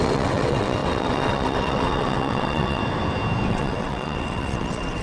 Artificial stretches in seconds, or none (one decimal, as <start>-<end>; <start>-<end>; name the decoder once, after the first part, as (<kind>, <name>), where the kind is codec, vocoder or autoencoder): 0.0-2.8 (vocoder, WaveNeXt); 3.5-5.0